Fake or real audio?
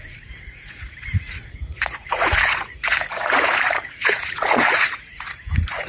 fake